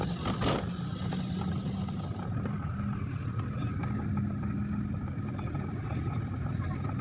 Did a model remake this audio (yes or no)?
no